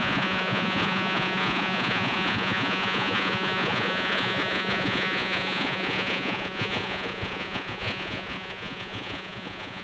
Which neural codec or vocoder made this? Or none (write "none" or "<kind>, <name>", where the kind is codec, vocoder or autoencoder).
vocoder, Vocos